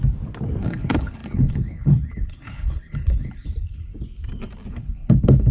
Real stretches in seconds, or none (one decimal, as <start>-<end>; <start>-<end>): 0.0-0.6; 3.9-4.7